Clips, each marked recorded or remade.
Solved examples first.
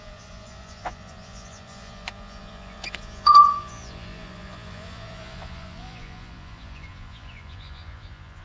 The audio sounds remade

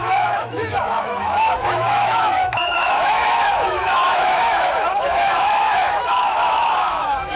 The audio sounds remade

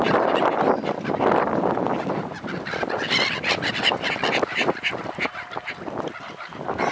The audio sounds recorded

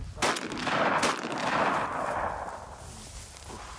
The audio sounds recorded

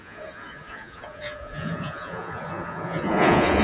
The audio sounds remade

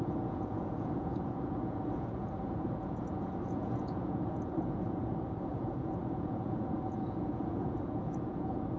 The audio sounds remade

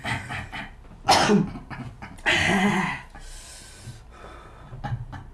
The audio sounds recorded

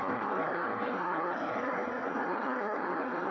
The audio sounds remade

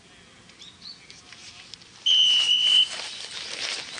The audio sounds recorded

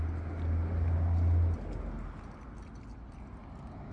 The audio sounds recorded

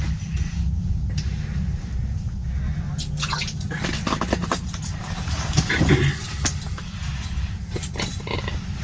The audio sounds recorded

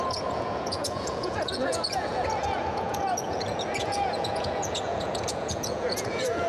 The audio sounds remade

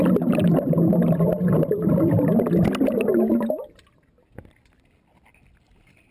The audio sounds recorded